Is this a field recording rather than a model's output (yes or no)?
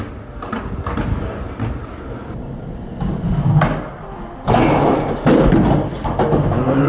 yes